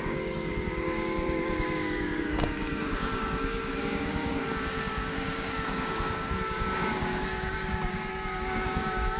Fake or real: fake